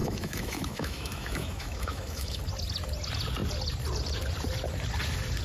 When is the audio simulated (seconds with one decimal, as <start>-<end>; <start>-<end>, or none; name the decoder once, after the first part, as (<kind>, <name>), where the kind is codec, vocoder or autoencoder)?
0.0-2.4 (autoencoder, DAC-VAE)